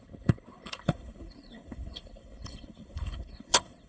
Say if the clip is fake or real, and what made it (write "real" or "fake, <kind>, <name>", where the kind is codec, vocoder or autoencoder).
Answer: fake, codec, HILCodec